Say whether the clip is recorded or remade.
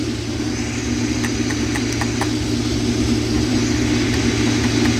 recorded